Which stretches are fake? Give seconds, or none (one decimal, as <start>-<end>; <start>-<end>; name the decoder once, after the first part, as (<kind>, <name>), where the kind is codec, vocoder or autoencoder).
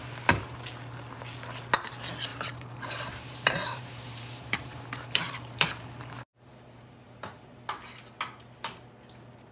2.3-7.5 (vocoder, BigVGAN v2)